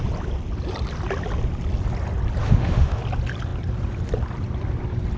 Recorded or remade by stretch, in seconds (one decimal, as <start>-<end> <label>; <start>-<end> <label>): 0.0-2.4 recorded; 2.4-3.0 remade; 3.0-5.2 recorded